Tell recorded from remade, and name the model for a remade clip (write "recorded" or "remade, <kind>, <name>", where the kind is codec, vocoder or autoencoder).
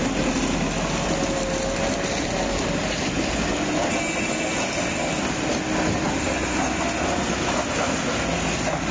recorded